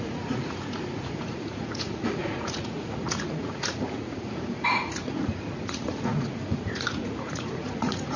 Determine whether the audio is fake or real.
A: fake